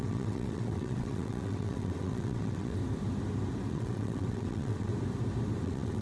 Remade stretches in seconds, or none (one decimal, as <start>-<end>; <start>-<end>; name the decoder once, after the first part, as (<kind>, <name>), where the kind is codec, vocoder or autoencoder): 0.0-2.8 (vocoder, WaveNeXt); 3.7-4.9; 5.6-6.0